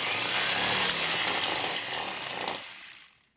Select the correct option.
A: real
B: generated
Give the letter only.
A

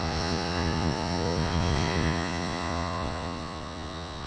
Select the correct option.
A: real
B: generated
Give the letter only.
B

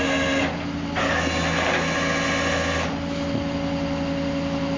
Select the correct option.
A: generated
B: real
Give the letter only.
B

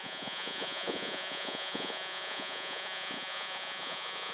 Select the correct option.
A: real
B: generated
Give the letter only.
B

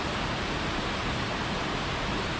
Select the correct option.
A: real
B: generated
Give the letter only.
A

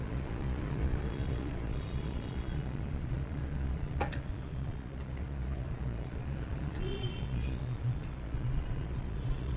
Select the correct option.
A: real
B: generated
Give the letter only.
B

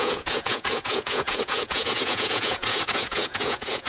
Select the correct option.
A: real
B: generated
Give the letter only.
B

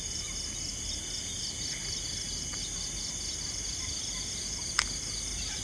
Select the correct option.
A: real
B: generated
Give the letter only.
A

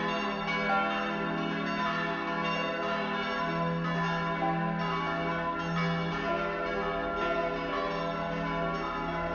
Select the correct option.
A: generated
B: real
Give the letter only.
B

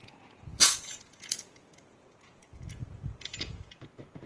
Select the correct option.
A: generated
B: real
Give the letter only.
A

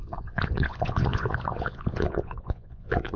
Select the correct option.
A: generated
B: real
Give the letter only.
A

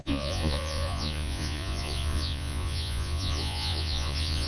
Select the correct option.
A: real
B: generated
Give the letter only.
B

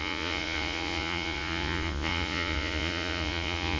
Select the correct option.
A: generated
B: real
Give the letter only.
A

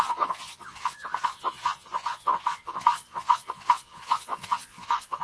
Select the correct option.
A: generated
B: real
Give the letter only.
A